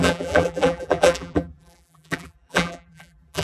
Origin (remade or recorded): remade